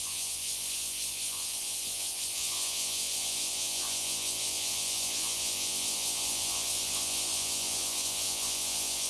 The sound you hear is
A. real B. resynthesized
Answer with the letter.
B